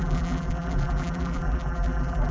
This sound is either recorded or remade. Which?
remade